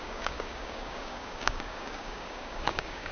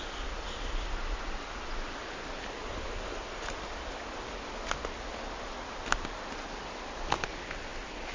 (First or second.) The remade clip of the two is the first